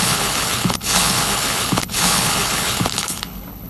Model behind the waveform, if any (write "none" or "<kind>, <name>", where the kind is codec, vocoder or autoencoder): codec, HILCodec